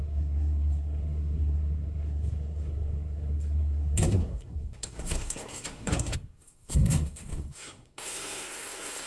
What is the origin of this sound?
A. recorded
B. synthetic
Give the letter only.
B